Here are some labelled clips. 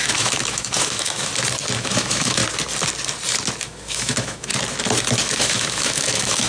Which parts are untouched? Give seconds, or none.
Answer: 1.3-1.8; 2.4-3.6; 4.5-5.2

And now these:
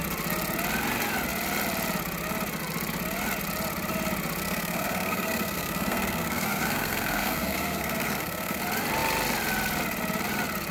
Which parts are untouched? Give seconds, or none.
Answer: 0.0-4.4; 8.6-10.7